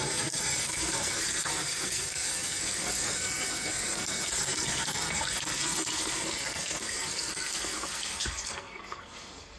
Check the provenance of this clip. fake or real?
fake